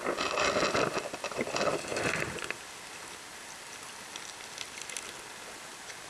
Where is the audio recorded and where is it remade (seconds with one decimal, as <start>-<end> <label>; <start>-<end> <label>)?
0.0-6.1 recorded